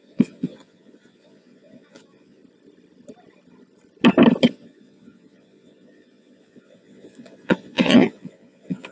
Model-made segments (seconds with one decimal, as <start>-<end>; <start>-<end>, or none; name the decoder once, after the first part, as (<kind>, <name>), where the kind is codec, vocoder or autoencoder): 0.0-2.4 (vocoder, Vocos); 4.5-8.9